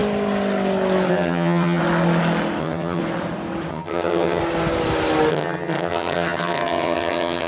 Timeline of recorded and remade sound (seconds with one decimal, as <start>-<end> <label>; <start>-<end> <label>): 0.0-1.1 recorded; 1.1-1.8 remade; 1.8-2.6 recorded; 2.6-3.0 remade; 3.0-3.7 recorded; 3.7-4.4 remade; 4.4-5.3 recorded; 5.3-7.5 remade